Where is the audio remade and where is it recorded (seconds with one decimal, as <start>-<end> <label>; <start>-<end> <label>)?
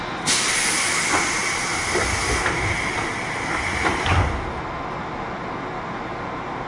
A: 0.0-6.7 recorded